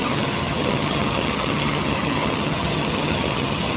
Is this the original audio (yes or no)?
no